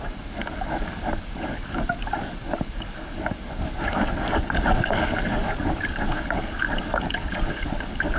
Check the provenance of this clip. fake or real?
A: fake